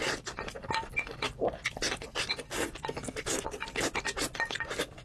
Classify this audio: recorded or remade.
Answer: recorded